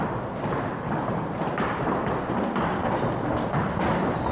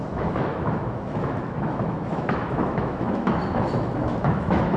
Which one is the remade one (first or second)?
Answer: second